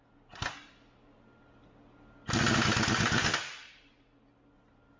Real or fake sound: real